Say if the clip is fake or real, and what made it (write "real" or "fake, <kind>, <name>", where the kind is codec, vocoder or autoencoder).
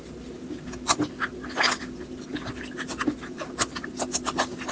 real